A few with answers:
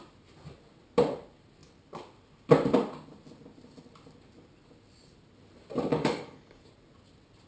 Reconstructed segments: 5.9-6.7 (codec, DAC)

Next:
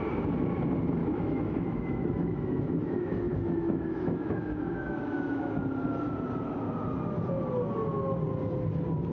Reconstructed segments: 1.0-5.5 (autoencoder, DAC-VAE)

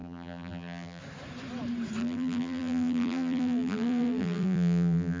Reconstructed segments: 0.0-1.0 (vocoder, BigVGAN v2); 2.0-5.2

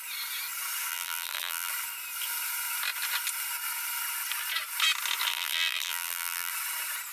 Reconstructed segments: 0.9-1.7 (vocoder, BigVGAN v2); 5.3-6.5

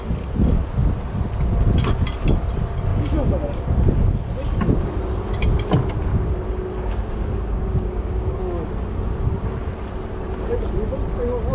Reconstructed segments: 2.9-3.6 (codec, DAC); 6.1-8.7

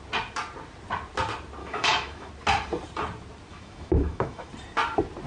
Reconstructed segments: 1.6-2.3 (autoencoder, DAC-VAE); 3.5-4.5

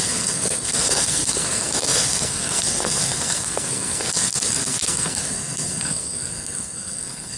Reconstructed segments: 0.0-7.4 (codec, SNAC)

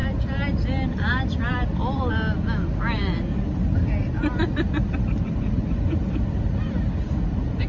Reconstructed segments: 4.0-7.2 (vocoder, BigVGAN v2)